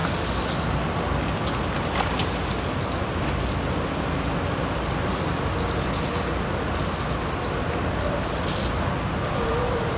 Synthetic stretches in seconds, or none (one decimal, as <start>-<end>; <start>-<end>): none